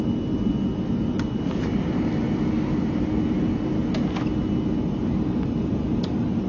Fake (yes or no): no